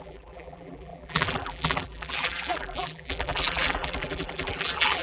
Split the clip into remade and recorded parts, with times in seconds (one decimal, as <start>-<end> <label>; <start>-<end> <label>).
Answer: 0.0-5.0 remade

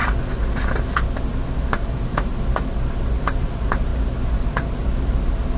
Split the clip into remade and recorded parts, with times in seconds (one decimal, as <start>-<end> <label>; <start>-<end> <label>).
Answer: 0.0-3.4 recorded; 3.4-3.9 remade; 3.9-4.7 recorded; 4.7-5.6 remade

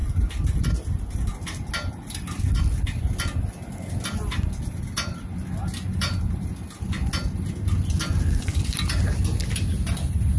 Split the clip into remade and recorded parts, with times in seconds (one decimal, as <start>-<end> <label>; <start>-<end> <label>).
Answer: 0.0-5.9 recorded; 5.9-6.5 remade; 6.5-10.4 recorded

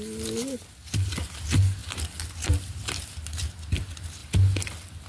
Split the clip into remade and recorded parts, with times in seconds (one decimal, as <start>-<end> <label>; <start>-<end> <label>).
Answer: 0.0-1.8 recorded; 1.8-3.1 remade; 3.1-5.1 recorded